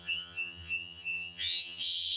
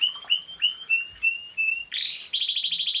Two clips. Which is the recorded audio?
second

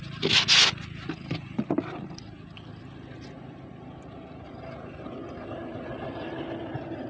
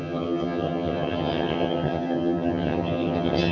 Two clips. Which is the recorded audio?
first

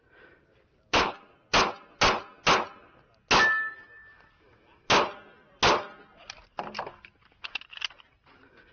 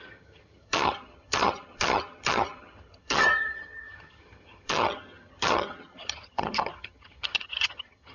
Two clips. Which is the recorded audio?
first